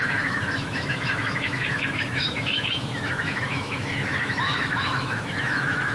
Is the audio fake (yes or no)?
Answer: yes